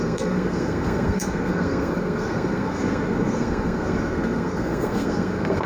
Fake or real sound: fake